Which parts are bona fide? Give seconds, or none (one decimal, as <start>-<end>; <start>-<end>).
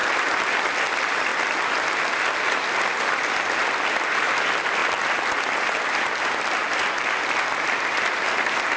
0.0-0.6; 1.3-2.2